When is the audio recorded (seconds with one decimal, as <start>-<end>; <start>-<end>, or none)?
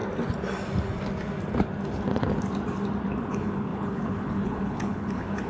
0.0-3.3